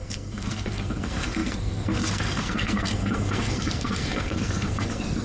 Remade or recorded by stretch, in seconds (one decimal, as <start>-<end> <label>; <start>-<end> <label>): 0.0-5.2 remade